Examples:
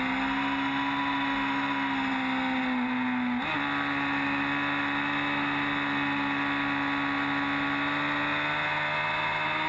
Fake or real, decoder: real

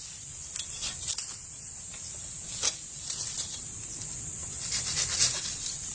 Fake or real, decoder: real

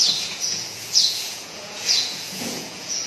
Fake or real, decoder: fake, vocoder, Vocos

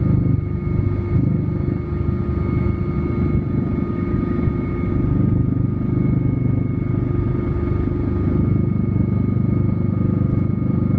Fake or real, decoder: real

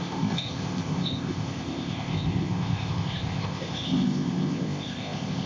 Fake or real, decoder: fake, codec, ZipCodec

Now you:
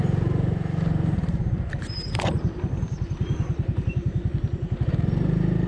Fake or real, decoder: fake, vocoder, BigVGAN v2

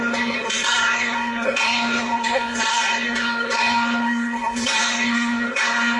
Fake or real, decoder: fake, codec, SNAC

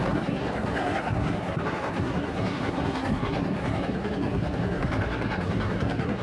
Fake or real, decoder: fake, codec, SNAC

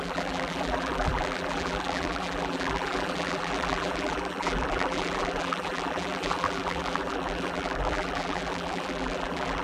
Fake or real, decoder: fake, vocoder, BigVGAN v2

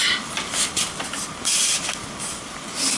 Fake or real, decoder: real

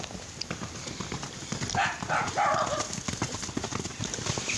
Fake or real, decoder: real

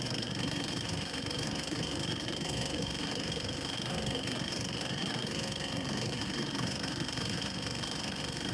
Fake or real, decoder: fake, codec, SNAC